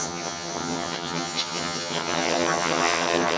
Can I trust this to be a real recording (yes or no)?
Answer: no